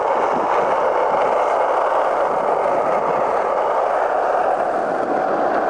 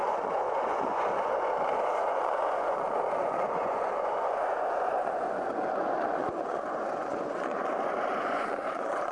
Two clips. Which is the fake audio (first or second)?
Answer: second